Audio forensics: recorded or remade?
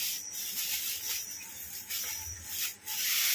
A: recorded